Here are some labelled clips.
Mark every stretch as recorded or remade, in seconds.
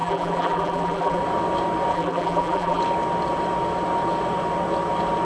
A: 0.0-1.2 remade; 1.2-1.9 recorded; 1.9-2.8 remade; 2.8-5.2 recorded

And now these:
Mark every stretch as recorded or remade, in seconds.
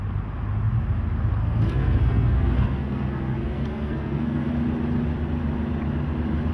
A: 0.0-1.4 recorded; 1.4-4.5 remade; 4.5-6.5 recorded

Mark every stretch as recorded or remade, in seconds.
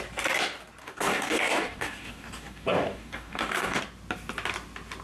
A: 0.0-0.8 recorded; 0.8-3.8 remade; 3.8-5.0 recorded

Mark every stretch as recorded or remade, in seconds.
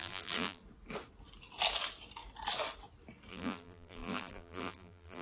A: 0.0-0.6 remade; 0.6-3.3 recorded; 3.3-5.2 remade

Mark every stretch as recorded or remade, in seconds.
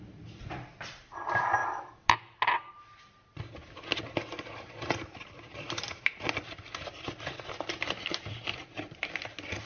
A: 0.0-1.6 remade; 1.6-2.7 recorded; 2.7-9.7 remade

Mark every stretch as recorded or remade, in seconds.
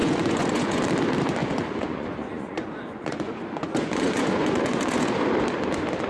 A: 0.0-0.8 remade; 0.8-1.4 recorded; 1.4-5.1 remade; 5.1-6.1 recorded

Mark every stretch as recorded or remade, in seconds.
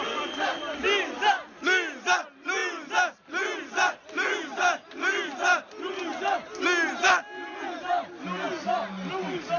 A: 0.0-9.6 recorded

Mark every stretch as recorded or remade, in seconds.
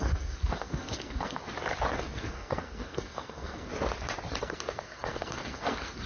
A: 0.0-1.4 remade; 1.4-2.0 recorded; 2.0-3.7 remade; 3.7-4.4 recorded; 4.4-6.1 remade